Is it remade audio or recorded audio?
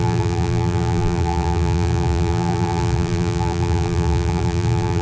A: remade